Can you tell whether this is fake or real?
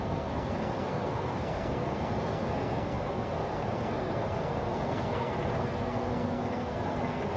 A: fake